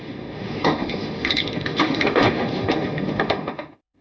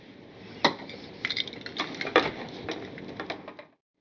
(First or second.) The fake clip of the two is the first